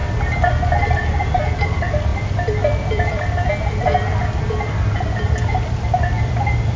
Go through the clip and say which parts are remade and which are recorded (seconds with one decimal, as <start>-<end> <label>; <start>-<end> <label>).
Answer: 0.0-1.4 recorded; 1.4-6.8 remade